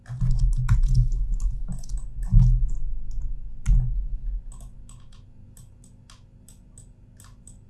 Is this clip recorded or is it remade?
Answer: recorded